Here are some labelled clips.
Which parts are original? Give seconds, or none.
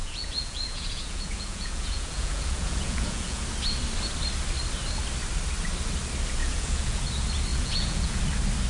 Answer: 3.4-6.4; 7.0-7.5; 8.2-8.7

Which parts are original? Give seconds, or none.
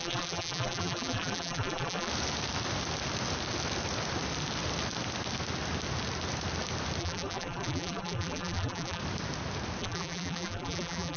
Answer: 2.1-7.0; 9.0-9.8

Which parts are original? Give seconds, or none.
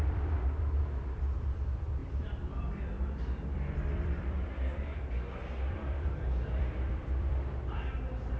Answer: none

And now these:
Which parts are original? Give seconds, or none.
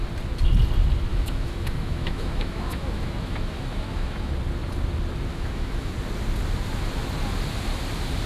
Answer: 0.0-1.1; 4.3-5.3; 5.9-8.3